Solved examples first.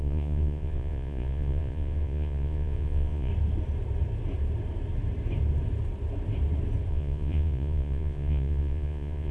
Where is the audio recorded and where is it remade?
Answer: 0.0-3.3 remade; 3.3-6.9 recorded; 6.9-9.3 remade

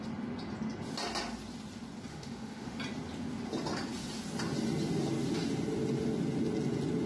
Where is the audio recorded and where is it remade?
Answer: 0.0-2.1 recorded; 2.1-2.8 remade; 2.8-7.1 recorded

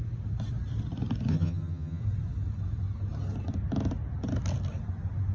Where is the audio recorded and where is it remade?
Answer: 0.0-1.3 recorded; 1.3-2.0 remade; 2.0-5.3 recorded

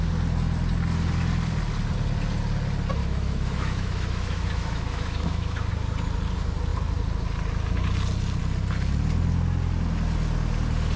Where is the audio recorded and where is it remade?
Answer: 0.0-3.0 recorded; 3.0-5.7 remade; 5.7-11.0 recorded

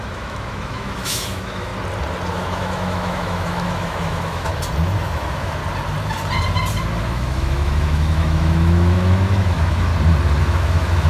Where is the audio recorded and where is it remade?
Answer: 0.0-1.7 remade; 1.7-2.3 recorded; 2.3-4.5 remade; 4.5-5.0 recorded; 5.0-5.6 remade; 5.6-7.0 recorded; 7.0-9.9 remade; 9.9-10.4 recorded; 10.4-11.1 remade

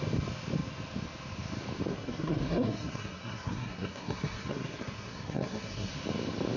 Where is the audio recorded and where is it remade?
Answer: 0.0-1.9 recorded; 1.9-5.9 remade; 5.9-6.6 recorded

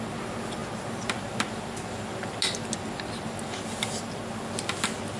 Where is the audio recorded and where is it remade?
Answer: 0.0-5.2 recorded